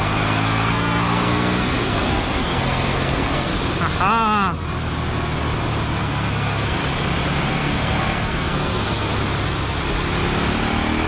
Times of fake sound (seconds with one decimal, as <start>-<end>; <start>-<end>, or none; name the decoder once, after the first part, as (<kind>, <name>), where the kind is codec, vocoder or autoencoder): 0.0-3.5 (codec, SNAC); 6.0-6.8; 7.5-9.1